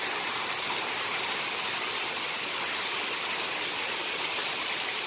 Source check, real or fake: real